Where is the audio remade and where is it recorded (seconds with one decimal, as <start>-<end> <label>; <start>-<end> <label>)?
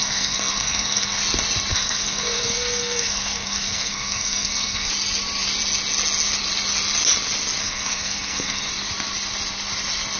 0.0-1.2 remade; 1.2-1.7 recorded; 1.7-4.9 remade; 4.9-7.6 recorded; 7.6-8.7 remade; 8.7-10.2 recorded